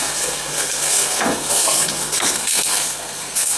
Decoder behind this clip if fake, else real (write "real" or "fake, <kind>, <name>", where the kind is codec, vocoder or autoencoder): fake, codec, SNAC